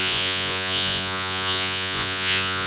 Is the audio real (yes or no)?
no